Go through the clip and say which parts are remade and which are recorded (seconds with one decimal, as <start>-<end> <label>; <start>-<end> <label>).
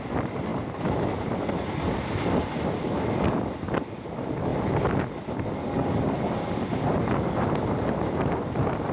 0.0-8.9 recorded